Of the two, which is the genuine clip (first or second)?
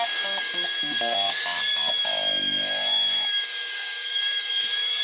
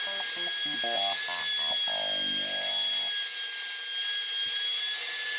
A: second